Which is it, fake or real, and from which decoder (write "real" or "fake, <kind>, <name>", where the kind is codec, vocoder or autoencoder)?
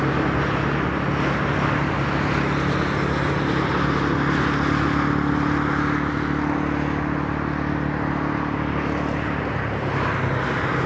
real